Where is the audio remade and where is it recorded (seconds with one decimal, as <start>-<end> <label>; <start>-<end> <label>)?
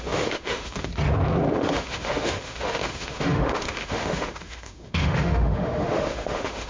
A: 0.0-0.9 remade; 0.9-1.6 recorded; 1.6-6.7 remade